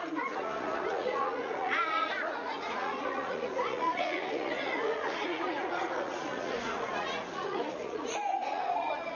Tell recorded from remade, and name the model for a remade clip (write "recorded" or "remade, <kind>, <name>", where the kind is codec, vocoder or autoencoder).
remade, vocoder, Vocos